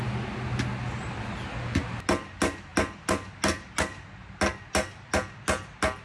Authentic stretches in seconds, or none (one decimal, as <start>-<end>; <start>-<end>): 0.0-6.0